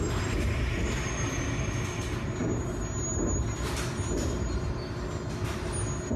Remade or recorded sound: recorded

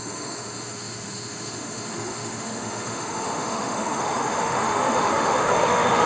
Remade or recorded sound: remade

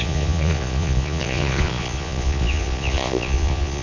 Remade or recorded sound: remade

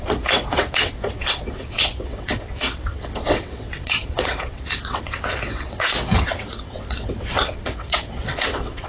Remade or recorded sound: remade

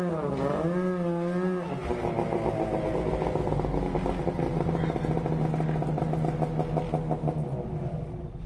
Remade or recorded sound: recorded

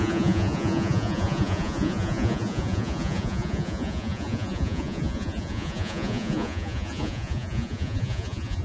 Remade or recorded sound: remade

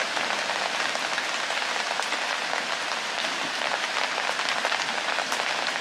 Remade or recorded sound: recorded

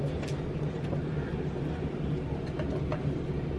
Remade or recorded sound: recorded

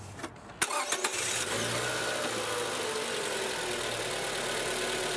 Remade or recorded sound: recorded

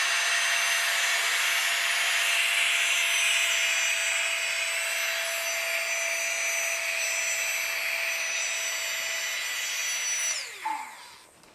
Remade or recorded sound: recorded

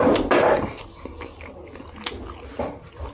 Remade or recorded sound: recorded